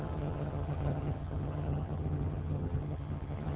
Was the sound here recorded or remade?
remade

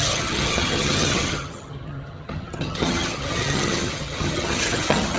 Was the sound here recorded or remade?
remade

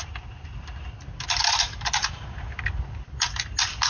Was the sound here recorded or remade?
recorded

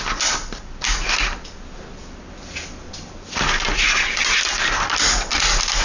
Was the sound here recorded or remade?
recorded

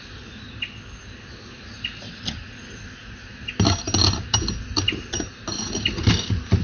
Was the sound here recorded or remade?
recorded